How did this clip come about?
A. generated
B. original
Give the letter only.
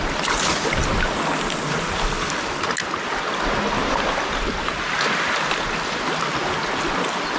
B